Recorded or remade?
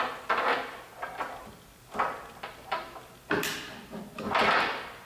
recorded